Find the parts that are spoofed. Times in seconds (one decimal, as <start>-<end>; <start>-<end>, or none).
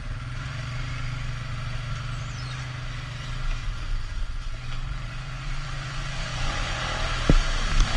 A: 3.6-6.8